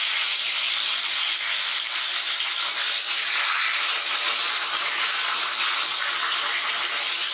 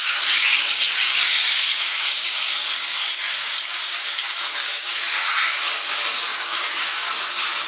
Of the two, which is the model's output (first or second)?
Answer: second